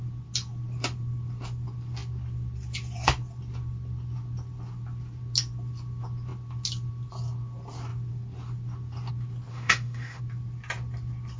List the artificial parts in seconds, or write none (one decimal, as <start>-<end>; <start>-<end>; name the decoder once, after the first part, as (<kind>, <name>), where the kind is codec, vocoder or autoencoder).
9.5-10.2 (autoencoder, DAC-VAE)